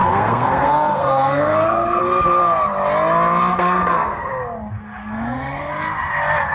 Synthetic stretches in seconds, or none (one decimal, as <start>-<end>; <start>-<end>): 0.0-2.0; 3.5-4.3; 5.0-5.7